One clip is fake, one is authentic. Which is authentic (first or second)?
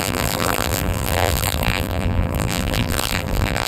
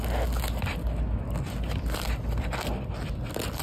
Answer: second